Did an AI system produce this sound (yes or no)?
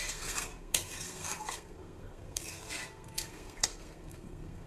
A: yes